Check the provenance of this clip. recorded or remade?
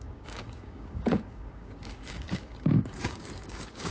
remade